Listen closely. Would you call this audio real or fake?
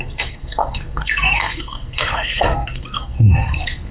fake